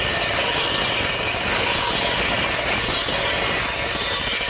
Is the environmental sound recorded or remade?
recorded